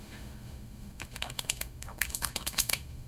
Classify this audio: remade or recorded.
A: remade